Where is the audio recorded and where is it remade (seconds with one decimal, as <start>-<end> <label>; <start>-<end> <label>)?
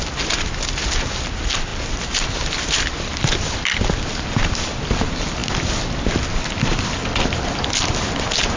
0.0-8.6 recorded